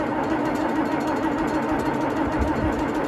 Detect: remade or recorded recorded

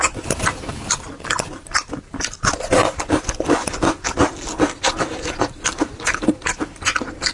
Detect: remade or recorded recorded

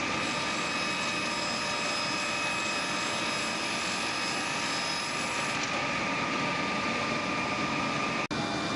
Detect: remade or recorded recorded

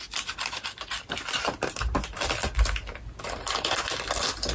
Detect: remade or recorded remade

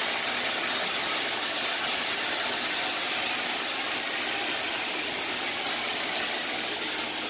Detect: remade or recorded recorded